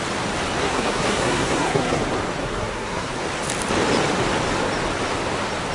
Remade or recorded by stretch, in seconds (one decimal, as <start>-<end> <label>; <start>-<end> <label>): 0.0-0.6 recorded; 0.6-2.0 remade; 2.0-2.4 recorded; 2.4-3.1 remade; 3.1-5.7 recorded